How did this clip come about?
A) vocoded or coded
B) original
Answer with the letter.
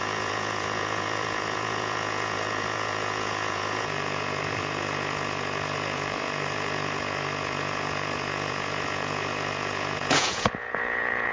A